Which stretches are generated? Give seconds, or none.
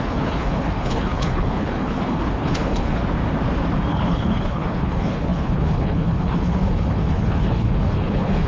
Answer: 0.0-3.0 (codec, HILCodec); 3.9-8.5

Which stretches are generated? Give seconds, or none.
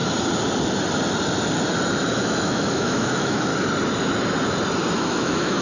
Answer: 2.1-3.5 (autoencoder, DAC-VAE); 4.9-5.6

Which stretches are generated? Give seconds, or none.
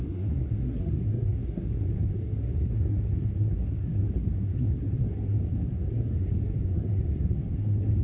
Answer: 0.0-8.0 (codec, SNAC)